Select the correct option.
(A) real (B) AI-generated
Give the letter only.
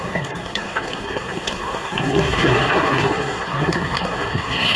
B